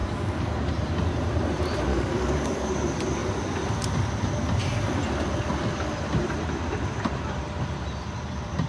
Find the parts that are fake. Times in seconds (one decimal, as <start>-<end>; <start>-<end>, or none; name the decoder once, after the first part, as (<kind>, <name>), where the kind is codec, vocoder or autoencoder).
0.0-0.5 (codec, DAC); 1.9-2.7